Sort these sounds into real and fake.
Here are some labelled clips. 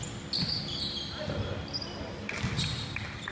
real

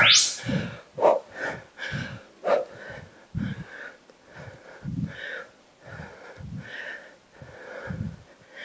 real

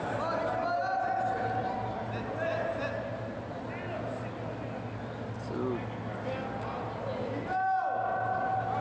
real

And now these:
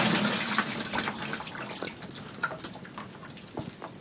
real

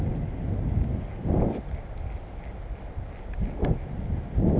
real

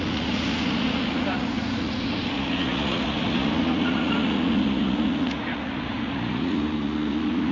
fake